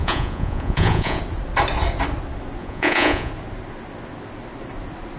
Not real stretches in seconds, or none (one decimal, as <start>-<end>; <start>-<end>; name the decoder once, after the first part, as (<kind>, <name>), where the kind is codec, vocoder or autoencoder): 0.0-1.2 (vocoder, Vocos); 2.6-3.3